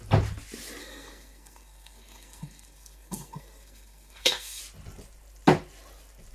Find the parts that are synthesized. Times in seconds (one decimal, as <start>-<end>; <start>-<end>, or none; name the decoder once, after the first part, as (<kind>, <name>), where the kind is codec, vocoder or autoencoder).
0.8-4.6 (codec, SNAC)